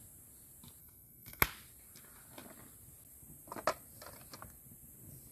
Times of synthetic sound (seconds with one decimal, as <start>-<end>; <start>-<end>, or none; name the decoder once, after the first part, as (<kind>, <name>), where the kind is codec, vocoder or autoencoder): 0.8-1.4 (codec, SNAC)